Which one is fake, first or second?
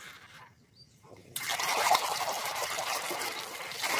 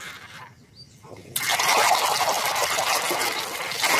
first